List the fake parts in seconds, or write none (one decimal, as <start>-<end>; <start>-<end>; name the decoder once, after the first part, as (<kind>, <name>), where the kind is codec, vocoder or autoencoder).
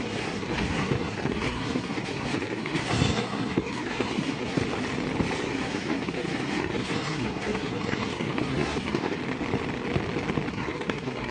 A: 0.0-4.6 (codec, SNAC); 5.4-9.2; 10.5-11.3